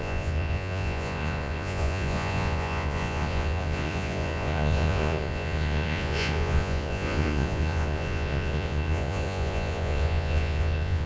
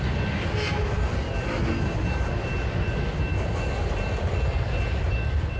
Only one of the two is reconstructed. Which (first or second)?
first